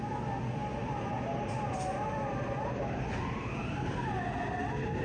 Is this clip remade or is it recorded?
recorded